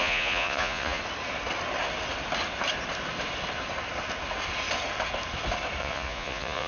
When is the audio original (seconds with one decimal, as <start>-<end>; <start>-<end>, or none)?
1.0-5.8

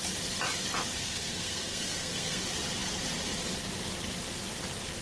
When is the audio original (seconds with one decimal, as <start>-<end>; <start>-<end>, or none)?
0.0-0.9; 2.4-5.0

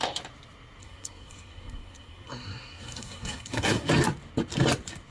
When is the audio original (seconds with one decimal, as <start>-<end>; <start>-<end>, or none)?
0.0-0.8; 3.9-5.1

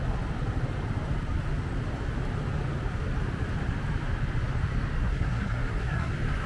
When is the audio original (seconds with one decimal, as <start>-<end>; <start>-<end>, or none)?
0.0-5.0; 6.1-6.5

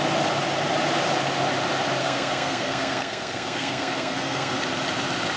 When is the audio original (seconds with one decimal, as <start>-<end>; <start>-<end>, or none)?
0.0-2.0; 4.6-5.4